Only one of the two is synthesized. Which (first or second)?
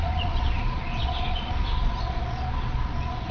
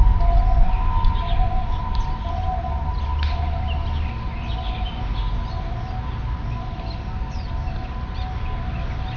first